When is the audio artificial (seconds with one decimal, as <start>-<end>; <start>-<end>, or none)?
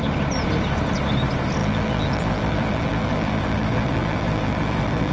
1.6-5.1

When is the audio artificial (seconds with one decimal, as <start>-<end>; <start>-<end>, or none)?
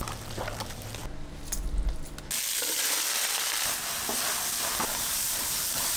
0.0-1.0; 4.6-6.0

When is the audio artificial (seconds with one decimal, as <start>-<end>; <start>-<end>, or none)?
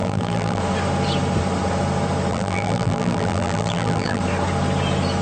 0.0-0.6; 2.3-4.2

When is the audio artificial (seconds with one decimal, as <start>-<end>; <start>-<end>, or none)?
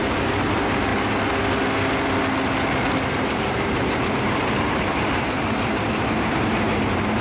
0.0-0.9; 3.1-7.2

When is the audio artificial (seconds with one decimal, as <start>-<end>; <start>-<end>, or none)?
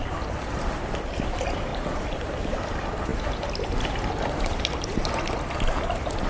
1.7-2.2